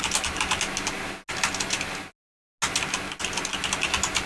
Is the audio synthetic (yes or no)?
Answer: no